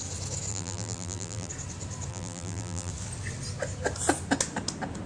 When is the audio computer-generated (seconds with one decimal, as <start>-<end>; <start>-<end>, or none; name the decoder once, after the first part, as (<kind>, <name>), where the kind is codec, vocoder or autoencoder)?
0.5-1.5 (vocoder, BigVGAN v2); 2.1-2.9